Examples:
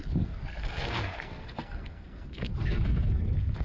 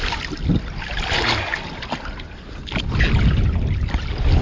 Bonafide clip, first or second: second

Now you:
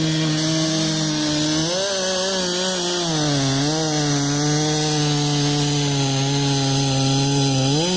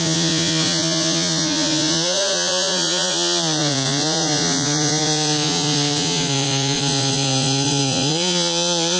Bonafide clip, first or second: first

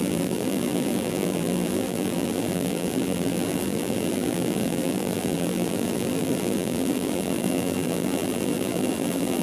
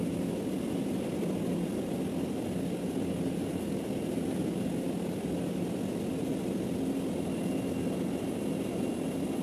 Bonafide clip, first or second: second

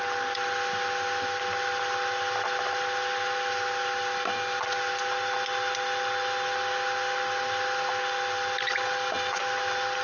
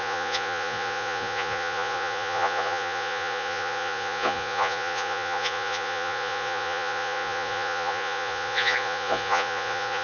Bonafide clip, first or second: first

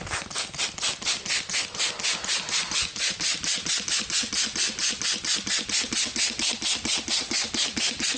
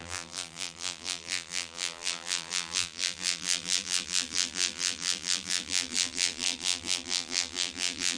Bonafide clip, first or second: first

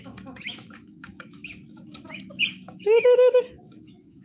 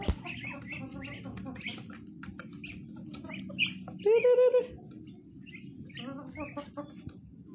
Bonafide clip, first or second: second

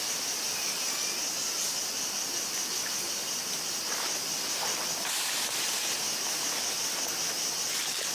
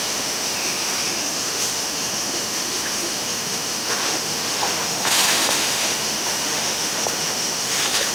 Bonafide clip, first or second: first